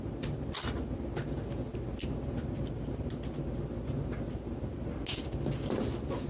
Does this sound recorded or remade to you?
recorded